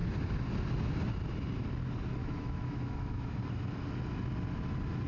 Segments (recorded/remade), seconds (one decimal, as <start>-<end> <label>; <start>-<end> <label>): 0.0-2.2 recorded; 2.2-3.4 remade; 3.4-5.1 recorded